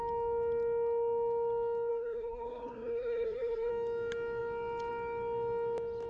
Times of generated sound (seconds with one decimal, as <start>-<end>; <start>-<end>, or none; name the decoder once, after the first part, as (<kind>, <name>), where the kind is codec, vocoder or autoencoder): 1.9-3.7 (codec, SNAC)